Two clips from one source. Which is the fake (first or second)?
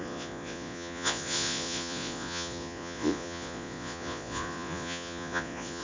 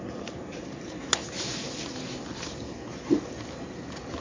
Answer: first